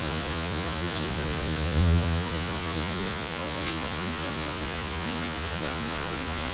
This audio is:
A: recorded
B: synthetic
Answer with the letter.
B